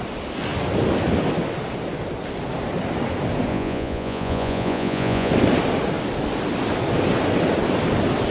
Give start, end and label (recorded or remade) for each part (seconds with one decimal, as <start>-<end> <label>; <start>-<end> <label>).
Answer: 0.0-3.5 recorded; 3.5-5.3 remade; 5.3-8.3 recorded